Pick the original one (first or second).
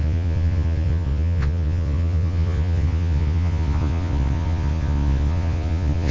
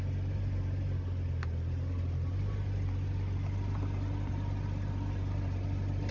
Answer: second